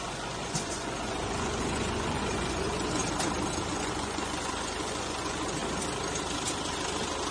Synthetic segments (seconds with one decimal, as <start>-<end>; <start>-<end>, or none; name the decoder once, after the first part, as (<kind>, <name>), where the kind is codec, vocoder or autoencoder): 0.0-3.0 (vocoder, Vocos); 3.7-5.6